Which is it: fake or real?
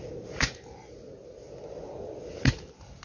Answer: real